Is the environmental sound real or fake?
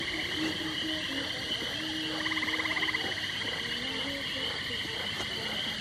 real